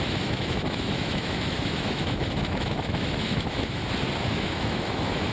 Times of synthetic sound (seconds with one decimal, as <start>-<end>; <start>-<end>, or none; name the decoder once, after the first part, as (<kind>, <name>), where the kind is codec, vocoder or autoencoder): 0.0-3.8 (autoencoder, DAC-VAE); 4.3-5.3